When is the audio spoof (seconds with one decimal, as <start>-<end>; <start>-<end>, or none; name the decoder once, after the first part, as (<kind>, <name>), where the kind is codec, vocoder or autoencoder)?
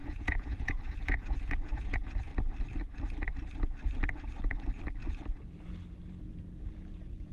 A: 0.0-2.3 (vocoder, Vocos); 6.7-7.3